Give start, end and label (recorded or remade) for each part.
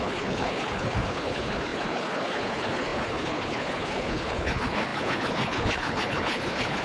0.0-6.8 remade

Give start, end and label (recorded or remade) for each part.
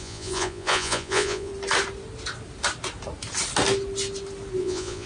0.0-1.5 remade; 1.5-4.6 recorded; 4.6-5.1 remade